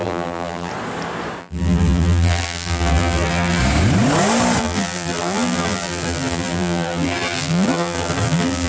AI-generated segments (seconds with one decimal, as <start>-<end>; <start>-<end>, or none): 0.0-0.7; 1.4-3.6; 4.6-8.7